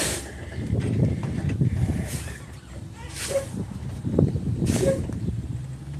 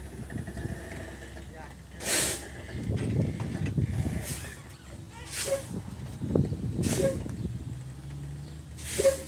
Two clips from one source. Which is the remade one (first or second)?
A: first